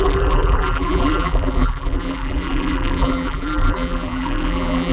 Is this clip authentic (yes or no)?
no